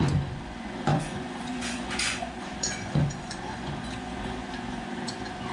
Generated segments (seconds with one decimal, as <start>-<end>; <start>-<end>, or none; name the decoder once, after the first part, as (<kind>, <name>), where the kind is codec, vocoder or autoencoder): 0.0-5.5 (vocoder, Vocos)